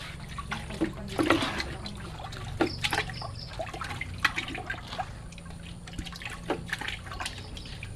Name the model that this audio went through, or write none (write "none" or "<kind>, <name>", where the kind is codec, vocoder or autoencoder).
none